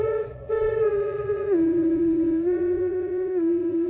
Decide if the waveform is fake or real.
fake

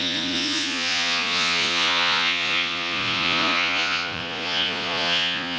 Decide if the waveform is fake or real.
fake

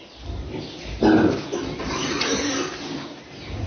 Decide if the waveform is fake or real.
real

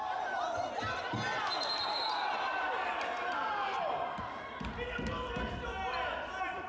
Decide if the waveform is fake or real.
real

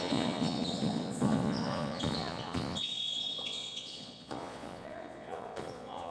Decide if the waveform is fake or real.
fake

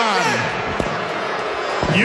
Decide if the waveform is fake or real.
fake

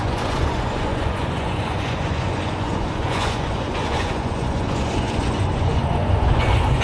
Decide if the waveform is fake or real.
fake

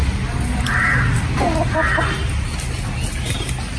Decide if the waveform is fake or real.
real